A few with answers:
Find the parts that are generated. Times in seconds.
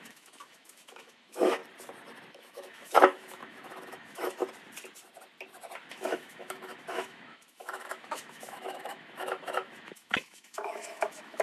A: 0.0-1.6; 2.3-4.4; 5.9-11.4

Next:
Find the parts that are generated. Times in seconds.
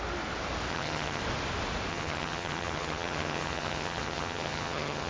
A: 0.7-1.2; 1.9-5.1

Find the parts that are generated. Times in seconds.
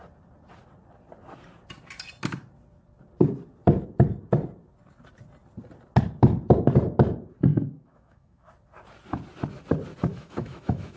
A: 7.5-8.5; 10.1-11.0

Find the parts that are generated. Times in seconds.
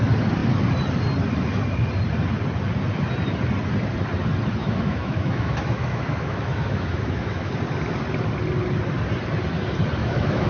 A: 4.6-7.5; 10.0-10.5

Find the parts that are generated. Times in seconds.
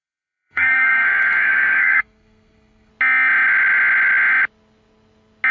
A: 0.0-2.9